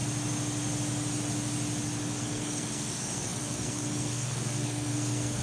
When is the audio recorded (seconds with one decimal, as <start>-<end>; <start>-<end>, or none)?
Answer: 0.0-2.2